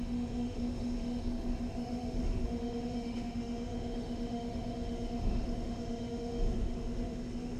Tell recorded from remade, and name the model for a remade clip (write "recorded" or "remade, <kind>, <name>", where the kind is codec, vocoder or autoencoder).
remade, autoencoder, DAC-VAE